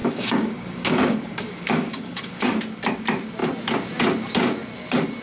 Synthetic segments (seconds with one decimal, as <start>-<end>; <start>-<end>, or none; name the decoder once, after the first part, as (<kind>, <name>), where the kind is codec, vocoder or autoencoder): 0.0-2.6 (codec, DAC)